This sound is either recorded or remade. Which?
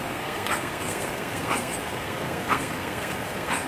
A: remade